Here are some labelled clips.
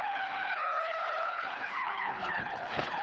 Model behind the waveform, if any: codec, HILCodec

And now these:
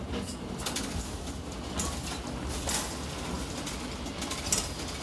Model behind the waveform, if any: none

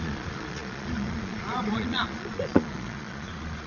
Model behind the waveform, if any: vocoder, Vocos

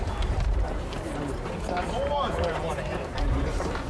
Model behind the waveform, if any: vocoder, BigVGAN v2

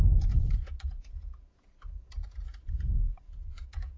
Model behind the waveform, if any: vocoder, Vocos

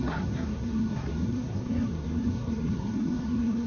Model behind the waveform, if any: codec, SNAC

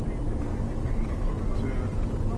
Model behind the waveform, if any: none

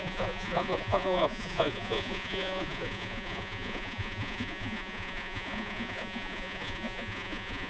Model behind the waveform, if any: vocoder, Vocos